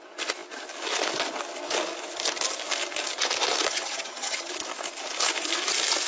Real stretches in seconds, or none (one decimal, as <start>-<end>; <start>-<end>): 0.0-3.7; 4.5-6.1